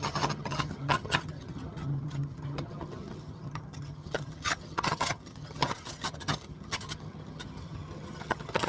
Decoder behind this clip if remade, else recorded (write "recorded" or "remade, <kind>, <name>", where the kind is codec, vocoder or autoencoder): remade, vocoder, HiFi-GAN